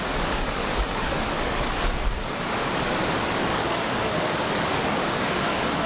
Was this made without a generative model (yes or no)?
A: no